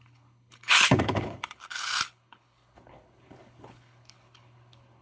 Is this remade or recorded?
remade